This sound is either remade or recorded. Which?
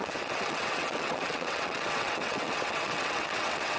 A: remade